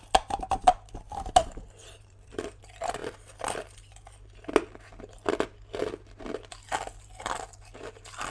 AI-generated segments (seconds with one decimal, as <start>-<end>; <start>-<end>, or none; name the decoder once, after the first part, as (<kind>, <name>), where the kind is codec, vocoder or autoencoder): 1.8-2.6 (vocoder, BigVGAN v2)